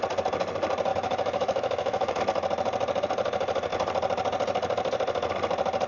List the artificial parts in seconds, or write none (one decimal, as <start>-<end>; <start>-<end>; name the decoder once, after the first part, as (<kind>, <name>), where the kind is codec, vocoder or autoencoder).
0.9-2.2 (autoencoder, DAC-VAE)